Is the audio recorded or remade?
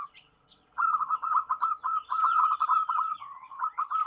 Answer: remade